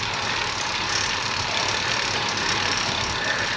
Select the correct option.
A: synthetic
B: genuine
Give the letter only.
B